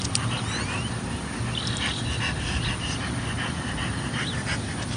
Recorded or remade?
recorded